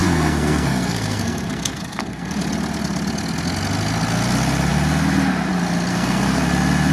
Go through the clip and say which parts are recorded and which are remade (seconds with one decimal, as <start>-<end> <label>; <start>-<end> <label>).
0.0-2.4 remade; 2.4-5.9 recorded; 5.9-6.4 remade; 6.4-6.9 recorded